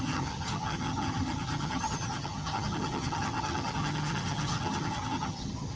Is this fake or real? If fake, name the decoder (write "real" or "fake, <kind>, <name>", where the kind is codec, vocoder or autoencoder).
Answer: fake, vocoder, HiFi-GAN